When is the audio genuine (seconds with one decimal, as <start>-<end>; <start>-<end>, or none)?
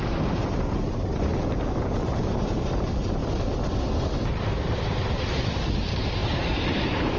1.3-2.3; 3.2-4.4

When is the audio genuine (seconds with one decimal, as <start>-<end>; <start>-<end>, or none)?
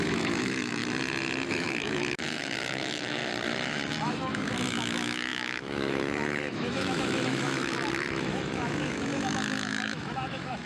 0.8-1.5; 3.2-3.9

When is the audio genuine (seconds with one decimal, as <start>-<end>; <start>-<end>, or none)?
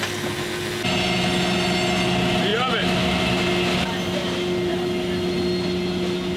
0.0-6.4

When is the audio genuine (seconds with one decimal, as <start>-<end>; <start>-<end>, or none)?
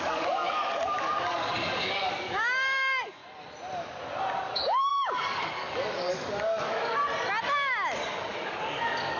3.2-4.5; 7.0-8.0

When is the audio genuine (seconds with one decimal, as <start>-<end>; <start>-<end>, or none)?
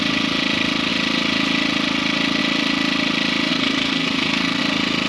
0.0-3.5; 4.6-5.1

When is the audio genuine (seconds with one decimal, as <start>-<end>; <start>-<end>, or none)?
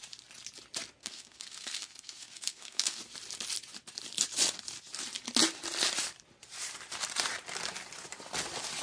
0.0-1.0; 3.0-8.8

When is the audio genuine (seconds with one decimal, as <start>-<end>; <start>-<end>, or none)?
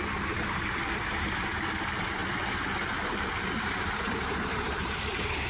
2.2-3.4